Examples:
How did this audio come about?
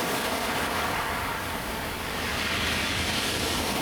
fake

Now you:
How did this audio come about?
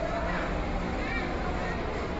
real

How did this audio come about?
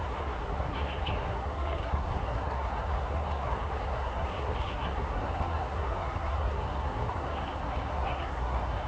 fake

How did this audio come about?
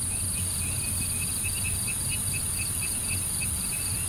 real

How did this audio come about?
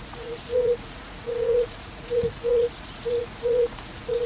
fake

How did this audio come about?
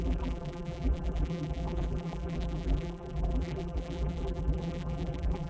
fake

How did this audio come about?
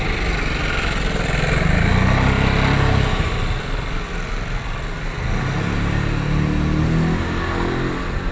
real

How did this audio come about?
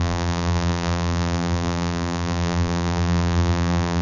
fake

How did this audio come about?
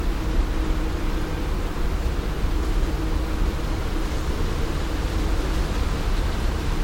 real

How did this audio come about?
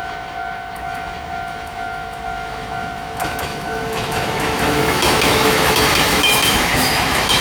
fake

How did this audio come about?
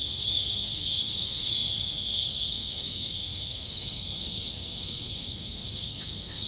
fake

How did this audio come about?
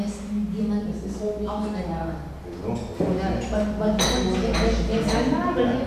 real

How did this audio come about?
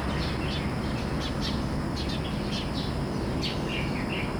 real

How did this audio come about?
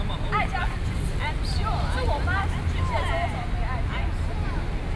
real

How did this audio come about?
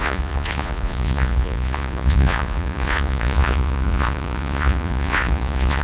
fake